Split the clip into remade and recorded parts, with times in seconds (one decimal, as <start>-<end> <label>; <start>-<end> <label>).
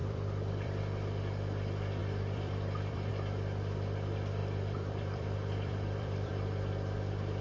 0.0-0.8 remade; 0.8-2.0 recorded; 2.0-3.1 remade; 3.1-4.4 recorded; 4.4-6.7 remade; 6.7-7.4 recorded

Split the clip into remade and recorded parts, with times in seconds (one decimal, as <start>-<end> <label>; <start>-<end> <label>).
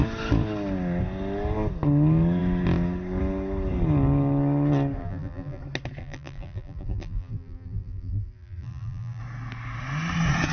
0.0-5.0 recorded; 5.0-5.6 remade; 5.6-6.0 recorded; 6.0-9.2 remade; 9.2-10.5 recorded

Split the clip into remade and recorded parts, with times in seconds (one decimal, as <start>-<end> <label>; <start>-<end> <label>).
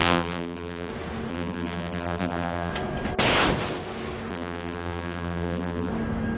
0.0-0.9 remade; 0.9-1.3 recorded; 1.3-2.7 remade; 2.7-4.3 recorded; 4.3-5.9 remade; 5.9-6.4 recorded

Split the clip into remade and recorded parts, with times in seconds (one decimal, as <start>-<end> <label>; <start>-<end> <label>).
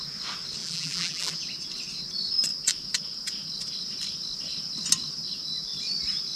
0.0-0.6 recorded; 0.6-1.3 remade; 1.3-6.4 recorded